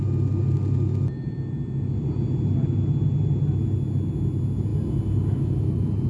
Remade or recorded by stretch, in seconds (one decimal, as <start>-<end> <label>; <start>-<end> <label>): 0.0-6.1 recorded